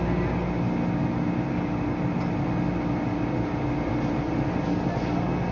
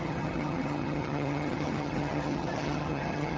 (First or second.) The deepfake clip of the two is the second